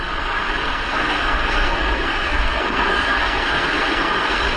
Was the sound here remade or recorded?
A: remade